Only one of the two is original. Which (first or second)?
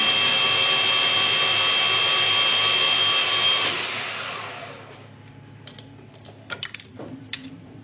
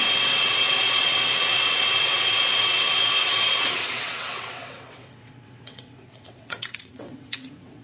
first